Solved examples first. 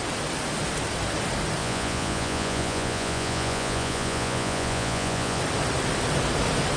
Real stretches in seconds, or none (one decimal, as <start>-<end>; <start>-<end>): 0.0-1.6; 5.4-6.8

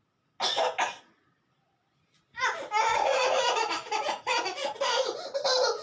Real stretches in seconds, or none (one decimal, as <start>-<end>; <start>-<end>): 0.0-2.9; 5.2-5.8

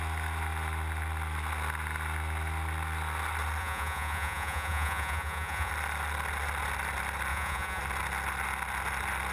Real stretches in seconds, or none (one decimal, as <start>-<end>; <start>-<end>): 0.0-3.6; 5.7-7.3; 7.8-9.3

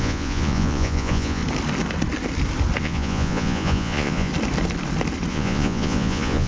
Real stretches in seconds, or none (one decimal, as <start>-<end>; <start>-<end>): 1.4-2.8; 4.3-5.3

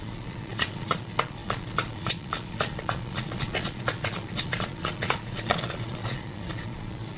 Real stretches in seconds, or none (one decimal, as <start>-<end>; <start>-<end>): none

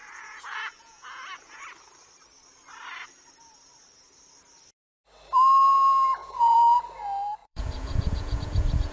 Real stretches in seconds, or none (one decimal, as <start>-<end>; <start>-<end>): 1.6-6.2; 6.8-7.4